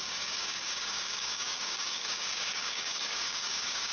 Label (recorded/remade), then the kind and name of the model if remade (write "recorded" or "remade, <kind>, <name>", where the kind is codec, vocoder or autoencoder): remade, codec, DAC